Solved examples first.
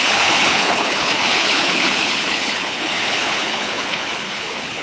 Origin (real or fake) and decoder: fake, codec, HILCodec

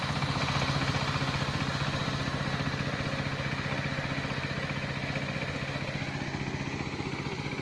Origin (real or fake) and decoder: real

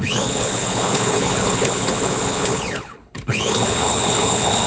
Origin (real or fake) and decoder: fake, codec, HILCodec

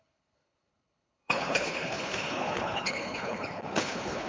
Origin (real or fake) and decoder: fake, codec, HILCodec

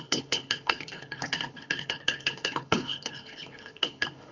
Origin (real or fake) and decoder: fake, codec, HILCodec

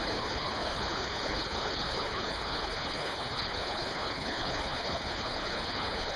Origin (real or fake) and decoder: fake, codec, HILCodec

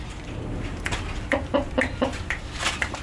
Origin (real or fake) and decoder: real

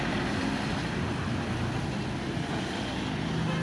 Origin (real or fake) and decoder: real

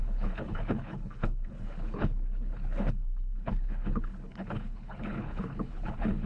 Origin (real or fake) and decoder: fake, codec, HILCodec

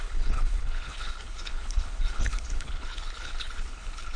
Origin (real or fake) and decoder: fake, codec, HILCodec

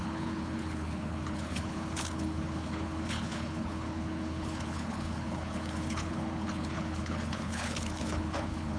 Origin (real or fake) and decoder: fake, codec, HILCodec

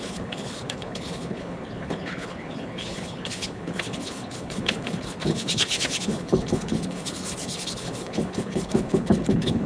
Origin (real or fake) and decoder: fake, codec, HILCodec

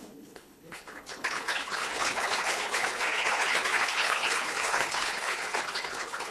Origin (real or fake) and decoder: fake, codec, HILCodec